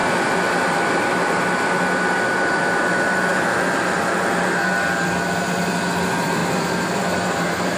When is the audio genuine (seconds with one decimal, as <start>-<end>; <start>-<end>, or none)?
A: 0.0-6.4